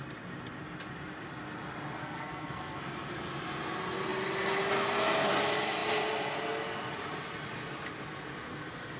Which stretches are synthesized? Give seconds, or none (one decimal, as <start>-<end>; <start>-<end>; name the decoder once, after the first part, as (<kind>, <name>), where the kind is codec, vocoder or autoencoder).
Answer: 2.0-2.8 (codec, SNAC)